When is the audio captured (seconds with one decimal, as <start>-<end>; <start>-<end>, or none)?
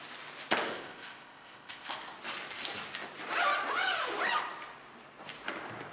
0.0-0.7; 1.9-5.9